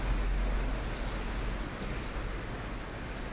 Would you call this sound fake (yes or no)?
no